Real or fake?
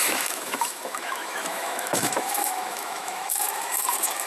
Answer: fake